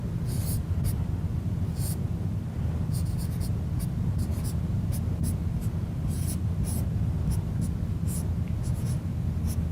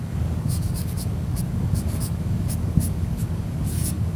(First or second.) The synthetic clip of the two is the second